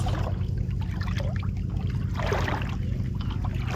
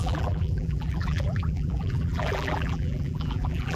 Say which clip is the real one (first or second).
first